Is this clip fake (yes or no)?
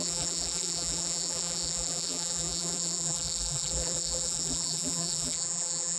yes